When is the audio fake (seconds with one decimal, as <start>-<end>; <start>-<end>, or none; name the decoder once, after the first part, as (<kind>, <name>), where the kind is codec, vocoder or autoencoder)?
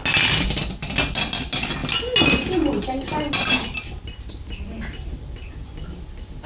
none